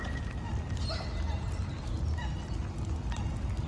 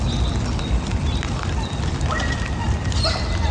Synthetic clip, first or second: second